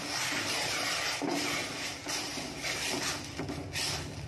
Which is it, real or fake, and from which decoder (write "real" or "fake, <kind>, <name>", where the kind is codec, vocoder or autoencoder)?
real